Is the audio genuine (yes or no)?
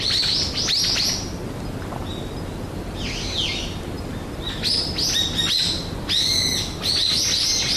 yes